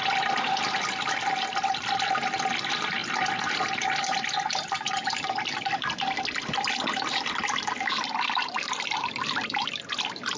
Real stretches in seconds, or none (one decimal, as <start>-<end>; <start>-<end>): 0.0-10.4